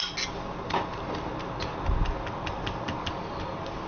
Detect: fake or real real